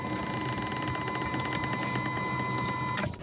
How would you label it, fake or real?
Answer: real